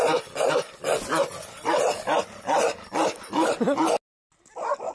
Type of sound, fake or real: real